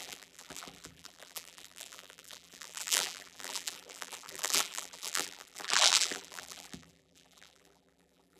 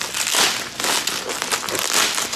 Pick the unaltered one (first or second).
second